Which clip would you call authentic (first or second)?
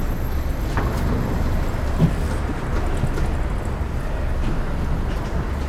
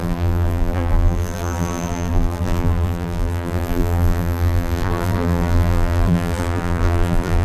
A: first